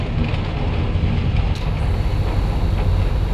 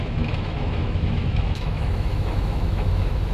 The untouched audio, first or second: first